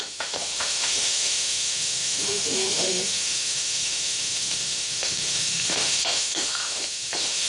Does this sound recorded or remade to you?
remade